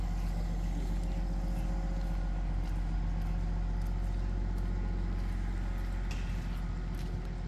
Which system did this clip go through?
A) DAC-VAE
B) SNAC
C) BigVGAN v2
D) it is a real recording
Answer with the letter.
D